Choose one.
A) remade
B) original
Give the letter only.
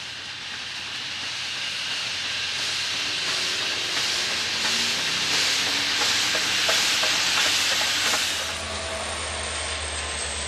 B